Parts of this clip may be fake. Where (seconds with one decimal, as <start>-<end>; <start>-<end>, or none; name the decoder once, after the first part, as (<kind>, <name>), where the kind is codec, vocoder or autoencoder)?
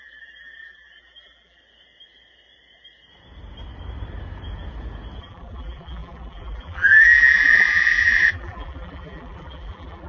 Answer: 0.0-1.6 (vocoder, BigVGAN v2); 5.2-10.1